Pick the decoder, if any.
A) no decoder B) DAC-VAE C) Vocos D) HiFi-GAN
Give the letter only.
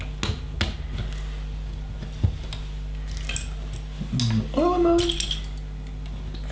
A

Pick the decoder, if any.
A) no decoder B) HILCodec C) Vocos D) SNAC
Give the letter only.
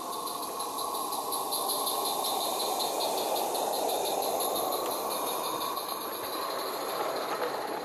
A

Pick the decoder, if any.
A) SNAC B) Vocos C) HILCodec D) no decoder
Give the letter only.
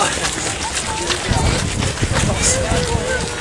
D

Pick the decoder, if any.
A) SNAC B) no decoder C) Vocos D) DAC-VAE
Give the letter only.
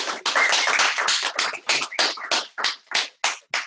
B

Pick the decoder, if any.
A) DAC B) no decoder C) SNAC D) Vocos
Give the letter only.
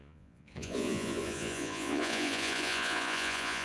D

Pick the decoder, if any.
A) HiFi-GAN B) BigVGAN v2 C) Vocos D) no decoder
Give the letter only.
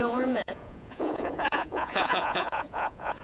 C